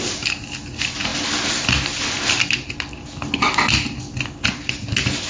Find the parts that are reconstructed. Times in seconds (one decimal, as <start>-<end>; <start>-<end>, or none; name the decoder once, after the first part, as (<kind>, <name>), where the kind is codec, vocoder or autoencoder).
none